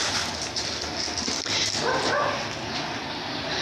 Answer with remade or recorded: recorded